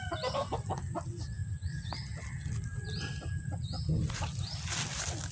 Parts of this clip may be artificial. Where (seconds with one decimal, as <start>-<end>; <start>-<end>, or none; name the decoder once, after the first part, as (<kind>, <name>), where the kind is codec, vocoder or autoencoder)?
none